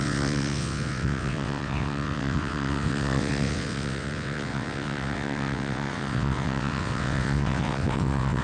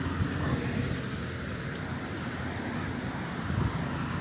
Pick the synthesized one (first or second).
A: first